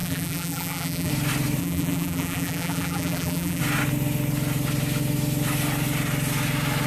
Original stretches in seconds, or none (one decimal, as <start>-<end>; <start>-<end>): 1.1-1.6; 3.6-6.9

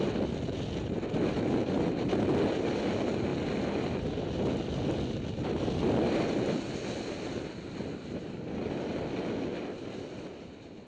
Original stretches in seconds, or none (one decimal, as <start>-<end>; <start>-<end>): 0.0-10.9

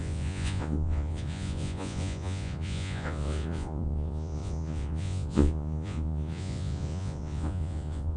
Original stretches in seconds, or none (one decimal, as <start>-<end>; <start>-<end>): none

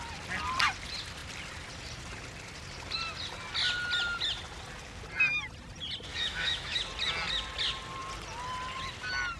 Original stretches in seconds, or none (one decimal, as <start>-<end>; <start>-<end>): 0.0-6.1; 6.8-9.4

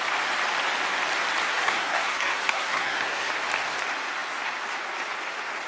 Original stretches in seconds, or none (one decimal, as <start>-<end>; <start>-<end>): 0.0-1.4; 3.3-5.7

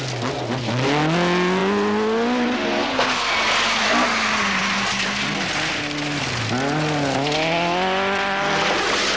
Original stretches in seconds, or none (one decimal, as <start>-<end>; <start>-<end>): 0.0-9.2